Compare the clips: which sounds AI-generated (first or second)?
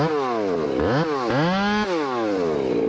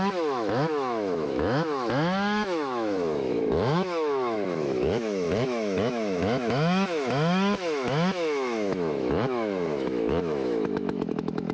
second